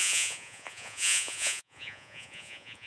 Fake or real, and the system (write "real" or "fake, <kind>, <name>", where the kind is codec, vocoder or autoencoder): fake, vocoder, Vocos